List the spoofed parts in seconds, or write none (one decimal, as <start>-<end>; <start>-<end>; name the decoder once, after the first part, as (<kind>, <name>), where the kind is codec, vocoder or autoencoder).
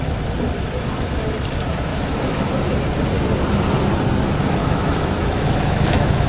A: 1.9-2.5 (autoencoder, DAC-VAE); 4.6-6.3